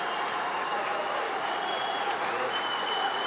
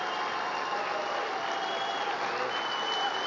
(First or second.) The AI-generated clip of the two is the first